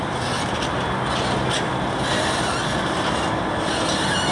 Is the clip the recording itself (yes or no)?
yes